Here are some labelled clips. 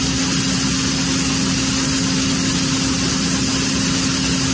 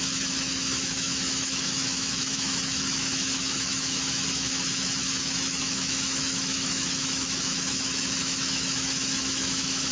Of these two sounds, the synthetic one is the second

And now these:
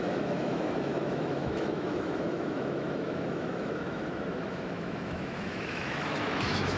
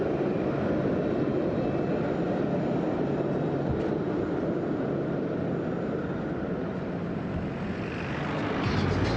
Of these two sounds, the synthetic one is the first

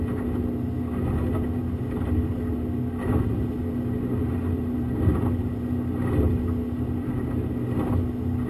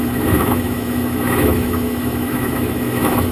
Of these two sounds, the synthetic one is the second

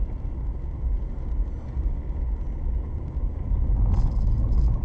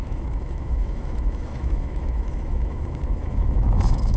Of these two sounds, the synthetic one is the second